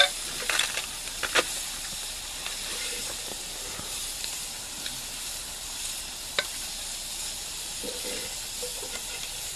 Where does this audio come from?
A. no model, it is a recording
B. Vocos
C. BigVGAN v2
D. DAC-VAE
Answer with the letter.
C